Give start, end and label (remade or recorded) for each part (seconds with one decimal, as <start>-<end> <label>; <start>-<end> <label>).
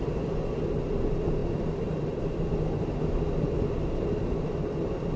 0.0-5.2 recorded